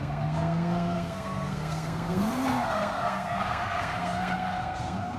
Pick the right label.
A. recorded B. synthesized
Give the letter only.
B